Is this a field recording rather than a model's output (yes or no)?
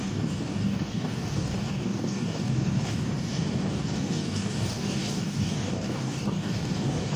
no